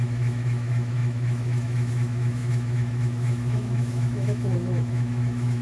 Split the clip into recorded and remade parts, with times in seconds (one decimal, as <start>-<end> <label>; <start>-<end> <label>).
0.0-5.6 remade